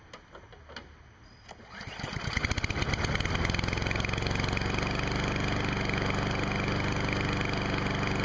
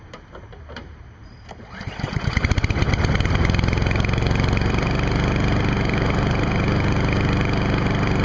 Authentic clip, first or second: first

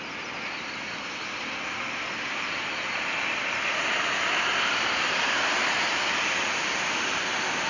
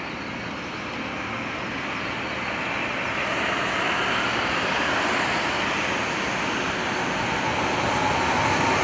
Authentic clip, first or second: second